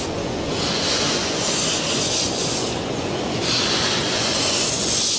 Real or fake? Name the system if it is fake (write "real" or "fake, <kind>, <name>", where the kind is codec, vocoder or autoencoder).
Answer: fake, vocoder, Vocos